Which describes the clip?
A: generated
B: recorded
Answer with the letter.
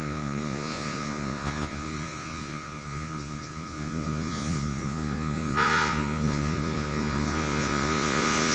A